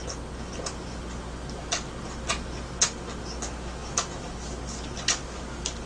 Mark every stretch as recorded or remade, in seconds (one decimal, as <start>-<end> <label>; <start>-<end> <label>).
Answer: 0.0-5.9 recorded